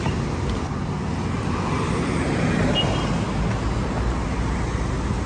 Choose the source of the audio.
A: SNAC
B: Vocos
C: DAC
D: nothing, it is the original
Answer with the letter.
D